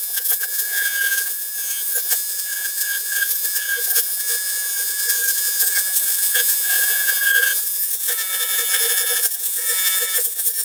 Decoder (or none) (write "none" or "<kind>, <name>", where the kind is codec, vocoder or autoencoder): vocoder, Vocos